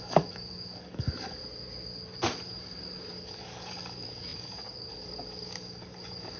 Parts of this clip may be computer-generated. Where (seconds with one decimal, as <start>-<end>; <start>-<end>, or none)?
0.0-1.4; 2.4-6.4